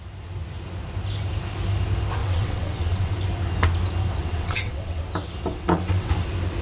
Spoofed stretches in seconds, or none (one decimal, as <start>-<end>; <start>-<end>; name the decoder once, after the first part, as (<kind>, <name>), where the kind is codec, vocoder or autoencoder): 2.2-3.1 (vocoder, WaveNeXt); 4.2-5.0; 5.5-6.1